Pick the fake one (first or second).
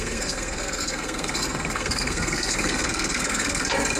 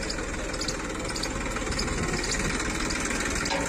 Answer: first